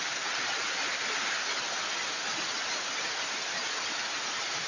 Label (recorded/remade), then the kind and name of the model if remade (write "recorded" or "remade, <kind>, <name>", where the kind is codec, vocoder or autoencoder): recorded